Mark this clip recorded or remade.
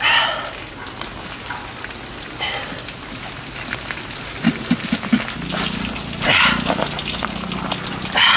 recorded